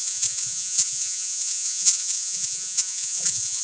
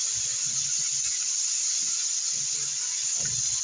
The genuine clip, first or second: second